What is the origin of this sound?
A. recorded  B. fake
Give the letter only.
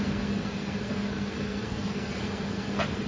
B